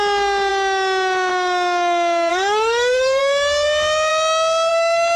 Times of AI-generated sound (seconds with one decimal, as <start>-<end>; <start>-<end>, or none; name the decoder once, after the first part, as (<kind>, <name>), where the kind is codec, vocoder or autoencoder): 2.3-3.2 (codec, SNAC)